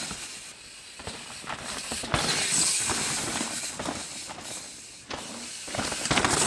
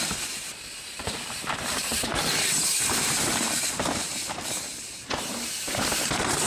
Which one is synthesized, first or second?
second